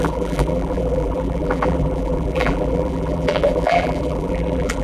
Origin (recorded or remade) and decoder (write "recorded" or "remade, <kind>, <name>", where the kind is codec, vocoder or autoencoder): remade, vocoder, BigVGAN v2